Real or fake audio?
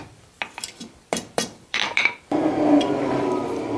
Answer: fake